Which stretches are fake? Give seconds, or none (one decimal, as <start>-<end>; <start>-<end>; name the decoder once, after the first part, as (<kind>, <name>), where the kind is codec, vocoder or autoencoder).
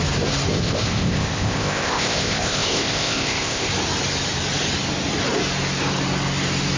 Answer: 0.5-3.7 (codec, ZipCodec)